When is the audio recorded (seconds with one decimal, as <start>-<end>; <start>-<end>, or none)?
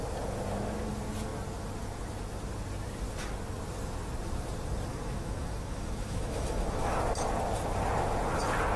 0.0-4.9; 7.0-8.8